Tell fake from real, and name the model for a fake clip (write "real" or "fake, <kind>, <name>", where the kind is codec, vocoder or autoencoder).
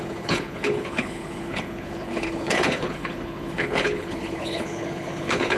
fake, codec, HILCodec